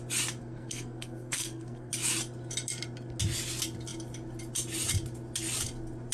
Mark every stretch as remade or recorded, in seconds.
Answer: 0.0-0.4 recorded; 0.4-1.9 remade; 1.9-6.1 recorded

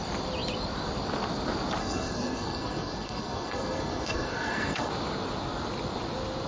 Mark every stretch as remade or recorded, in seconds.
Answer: 0.0-1.8 recorded; 1.8-4.9 remade; 4.9-6.5 recorded

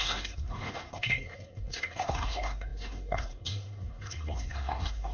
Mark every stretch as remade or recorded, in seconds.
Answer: 0.0-5.1 remade

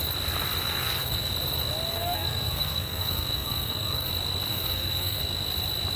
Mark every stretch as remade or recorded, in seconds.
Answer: 0.0-0.6 recorded; 0.6-1.3 remade; 1.3-1.9 recorded; 1.9-4.1 remade; 4.1-4.5 recorded; 4.5-5.2 remade; 5.2-6.0 recorded

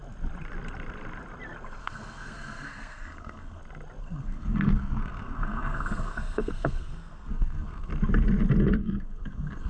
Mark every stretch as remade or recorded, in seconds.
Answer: 0.0-1.8 recorded; 1.8-3.6 remade; 3.6-4.0 recorded; 4.0-7.9 remade; 7.9-8.8 recorded; 8.8-9.7 remade

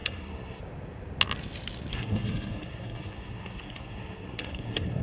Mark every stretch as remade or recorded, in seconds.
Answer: 0.0-0.6 remade; 0.6-1.9 recorded; 1.9-5.0 remade

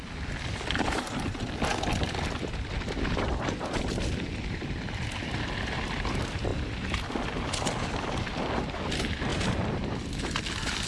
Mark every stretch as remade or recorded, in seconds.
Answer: 0.0-10.9 recorded